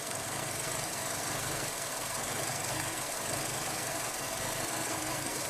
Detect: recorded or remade remade